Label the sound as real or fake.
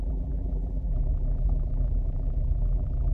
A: fake